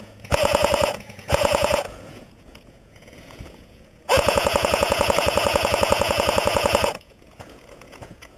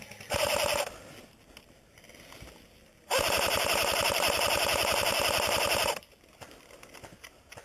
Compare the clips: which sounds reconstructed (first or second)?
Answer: first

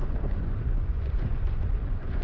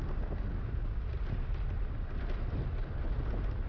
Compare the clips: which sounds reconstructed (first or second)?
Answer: first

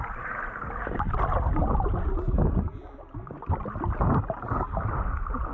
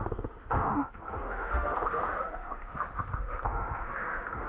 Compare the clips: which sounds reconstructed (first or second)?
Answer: second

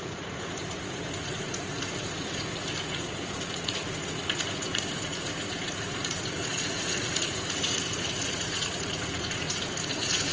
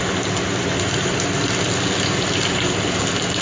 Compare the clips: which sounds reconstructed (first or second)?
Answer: first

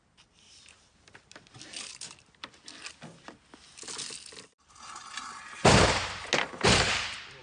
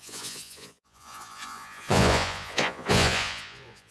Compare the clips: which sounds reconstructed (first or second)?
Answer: second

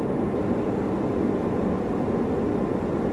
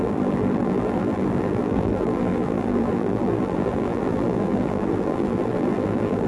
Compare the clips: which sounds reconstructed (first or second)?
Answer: second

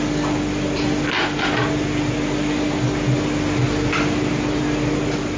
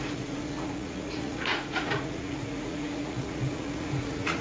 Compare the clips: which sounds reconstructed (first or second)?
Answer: second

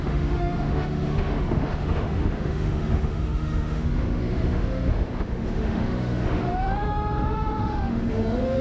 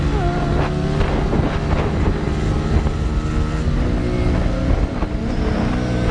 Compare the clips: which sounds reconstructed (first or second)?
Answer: first